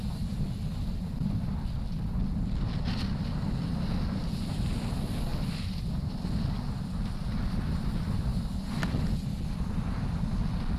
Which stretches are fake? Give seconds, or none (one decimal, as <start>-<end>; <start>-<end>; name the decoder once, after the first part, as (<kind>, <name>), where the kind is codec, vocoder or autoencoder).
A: 0.7-1.5 (vocoder, BigVGAN v2)